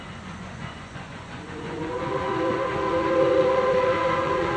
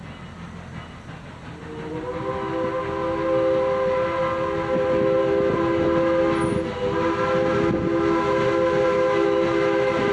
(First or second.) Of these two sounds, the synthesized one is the first